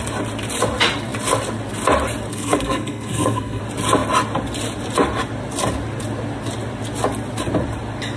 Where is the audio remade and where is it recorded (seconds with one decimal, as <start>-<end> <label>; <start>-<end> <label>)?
0.0-2.3 recorded; 2.3-3.6 remade; 3.6-8.2 recorded